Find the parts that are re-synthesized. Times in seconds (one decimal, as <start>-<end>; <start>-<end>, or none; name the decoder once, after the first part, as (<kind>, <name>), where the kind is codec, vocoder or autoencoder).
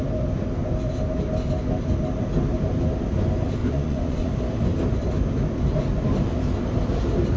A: 3.6-4.3 (vocoder, Vocos)